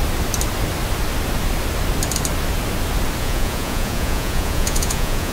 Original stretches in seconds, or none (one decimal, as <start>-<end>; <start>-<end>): 0.0-3.2